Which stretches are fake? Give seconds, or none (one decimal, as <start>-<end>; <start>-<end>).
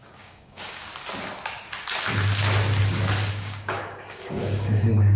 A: 0.0-0.9; 3.3-5.2